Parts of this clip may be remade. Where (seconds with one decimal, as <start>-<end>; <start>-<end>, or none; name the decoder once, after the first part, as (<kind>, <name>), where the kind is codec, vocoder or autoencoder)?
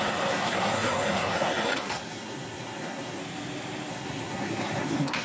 0.0-3.2 (codec, SNAC); 3.9-5.2